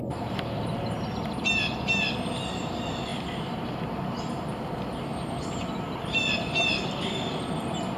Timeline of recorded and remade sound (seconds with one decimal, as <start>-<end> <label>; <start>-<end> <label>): 0.0-8.0 recorded